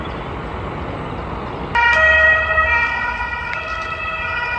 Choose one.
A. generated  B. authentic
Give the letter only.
B